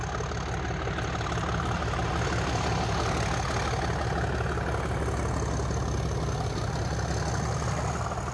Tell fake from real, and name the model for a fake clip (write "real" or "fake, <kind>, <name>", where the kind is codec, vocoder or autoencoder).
real